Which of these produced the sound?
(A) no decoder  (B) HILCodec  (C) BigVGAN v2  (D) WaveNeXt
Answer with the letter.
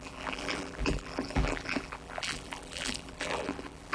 C